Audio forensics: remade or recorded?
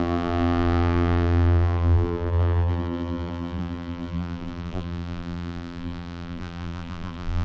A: remade